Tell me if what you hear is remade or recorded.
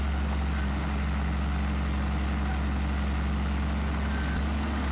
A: recorded